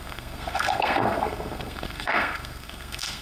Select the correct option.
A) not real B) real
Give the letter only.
A